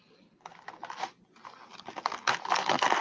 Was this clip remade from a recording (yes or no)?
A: no